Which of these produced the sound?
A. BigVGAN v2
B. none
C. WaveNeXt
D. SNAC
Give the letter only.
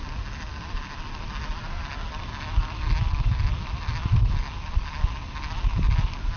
B